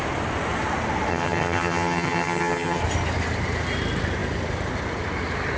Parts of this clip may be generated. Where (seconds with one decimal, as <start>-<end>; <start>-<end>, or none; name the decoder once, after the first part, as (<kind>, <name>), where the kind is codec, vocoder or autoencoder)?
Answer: 1.1-2.8 (vocoder, HiFi-GAN)